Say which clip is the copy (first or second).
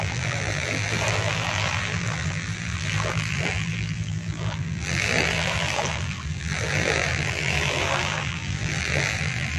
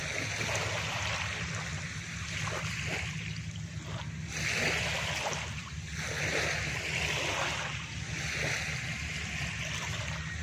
first